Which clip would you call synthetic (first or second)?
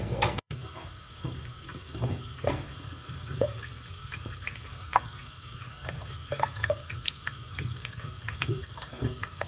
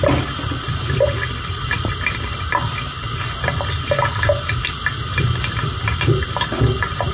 first